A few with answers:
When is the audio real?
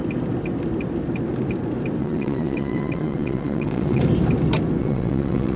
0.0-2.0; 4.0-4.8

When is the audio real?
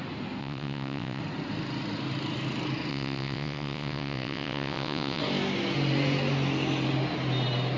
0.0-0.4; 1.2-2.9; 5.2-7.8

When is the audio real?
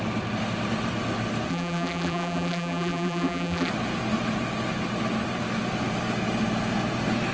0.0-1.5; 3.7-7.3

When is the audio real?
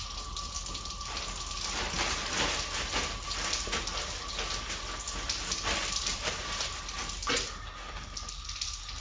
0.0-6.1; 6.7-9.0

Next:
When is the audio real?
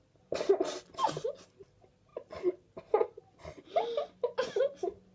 0.0-5.1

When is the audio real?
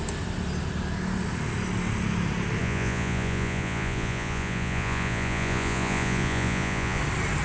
0.0-2.6; 7.0-7.4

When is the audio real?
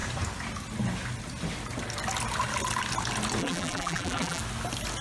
0.0-3.4; 4.4-5.0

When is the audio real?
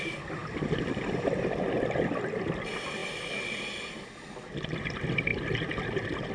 0.0-6.3